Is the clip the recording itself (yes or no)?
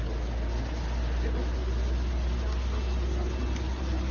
yes